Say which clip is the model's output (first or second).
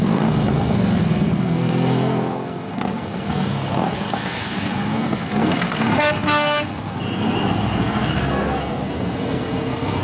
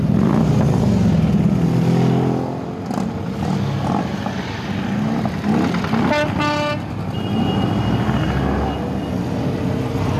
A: first